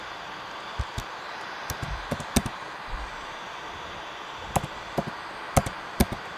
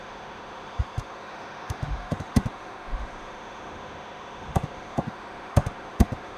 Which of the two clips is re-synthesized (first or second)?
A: second